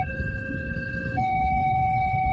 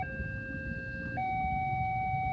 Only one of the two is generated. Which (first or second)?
first